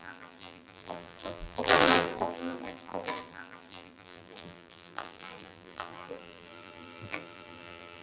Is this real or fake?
fake